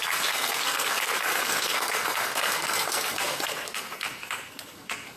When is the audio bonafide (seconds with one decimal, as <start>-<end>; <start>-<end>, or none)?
none